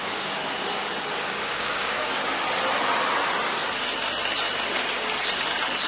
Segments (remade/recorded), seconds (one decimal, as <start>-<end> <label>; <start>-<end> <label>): 0.0-0.4 remade; 0.4-1.2 recorded; 1.2-2.1 remade; 2.1-5.9 recorded